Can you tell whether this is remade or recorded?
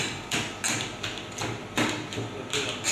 recorded